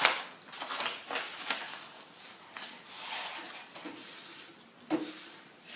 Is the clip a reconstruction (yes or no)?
no